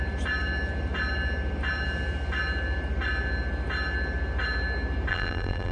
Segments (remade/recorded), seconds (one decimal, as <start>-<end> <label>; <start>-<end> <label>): 0.0-5.1 recorded; 5.1-5.7 remade